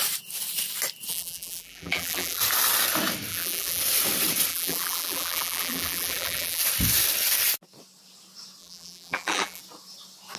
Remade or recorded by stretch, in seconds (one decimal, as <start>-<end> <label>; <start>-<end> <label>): 0.0-1.1 recorded; 1.1-2.4 remade; 2.4-3.3 recorded; 3.3-3.8 remade; 3.8-4.5 recorded; 4.5-6.6 remade; 6.6-8.6 recorded; 8.6-9.6 remade; 9.6-10.4 recorded